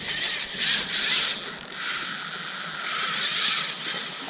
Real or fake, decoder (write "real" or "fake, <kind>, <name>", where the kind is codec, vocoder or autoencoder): real